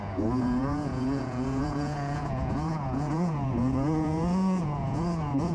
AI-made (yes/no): yes